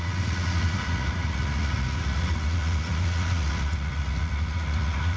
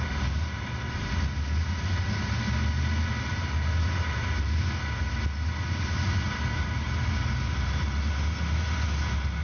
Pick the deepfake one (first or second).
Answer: first